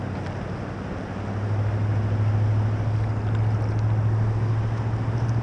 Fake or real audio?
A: real